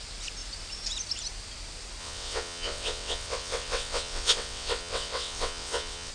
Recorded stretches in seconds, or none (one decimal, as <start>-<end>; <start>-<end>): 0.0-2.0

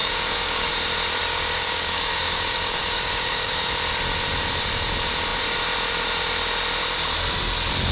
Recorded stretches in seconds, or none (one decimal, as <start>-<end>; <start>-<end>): 0.7-1.2; 3.7-7.9

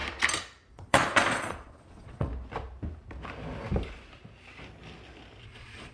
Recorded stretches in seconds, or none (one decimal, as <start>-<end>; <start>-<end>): 0.0-0.7; 2.3-5.4

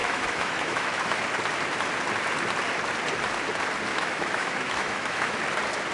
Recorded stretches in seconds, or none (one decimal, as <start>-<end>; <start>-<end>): 1.2-3.9; 5.4-5.9